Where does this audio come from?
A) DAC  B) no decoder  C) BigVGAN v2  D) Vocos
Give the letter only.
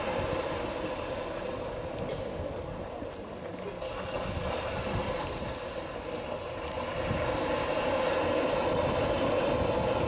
B